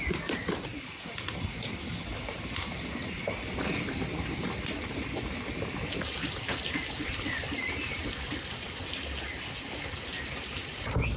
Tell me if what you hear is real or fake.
real